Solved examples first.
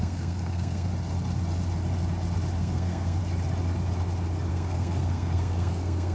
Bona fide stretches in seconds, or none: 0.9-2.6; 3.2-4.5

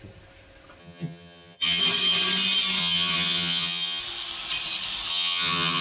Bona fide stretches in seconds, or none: 0.0-0.8; 1.8-2.8; 4.0-5.1

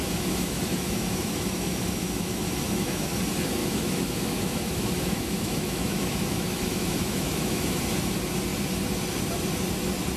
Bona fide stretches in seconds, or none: 3.2-3.6; 7.8-10.2

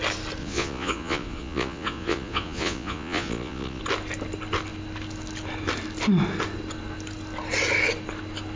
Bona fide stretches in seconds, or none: 0.0-0.4; 3.8-8.6